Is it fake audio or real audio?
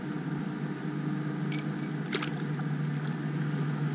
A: real